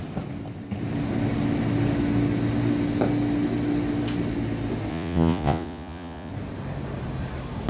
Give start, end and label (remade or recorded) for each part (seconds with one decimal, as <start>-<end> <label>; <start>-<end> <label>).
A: 0.0-4.9 recorded; 4.9-6.3 remade; 6.3-7.7 recorded